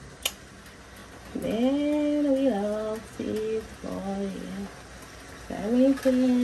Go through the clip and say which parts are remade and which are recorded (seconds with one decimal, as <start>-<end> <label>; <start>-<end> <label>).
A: 0.0-6.4 recorded